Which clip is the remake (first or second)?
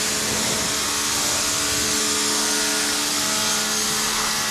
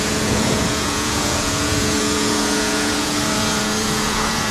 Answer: second